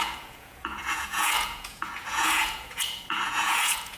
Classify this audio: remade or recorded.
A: remade